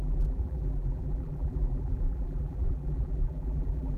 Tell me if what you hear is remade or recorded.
remade